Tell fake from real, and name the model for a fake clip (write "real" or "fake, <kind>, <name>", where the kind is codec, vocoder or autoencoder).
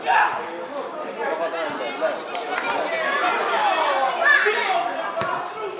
real